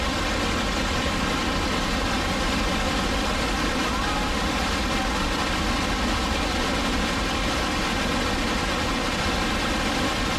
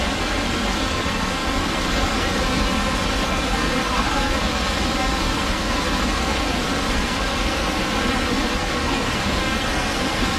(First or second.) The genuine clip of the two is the first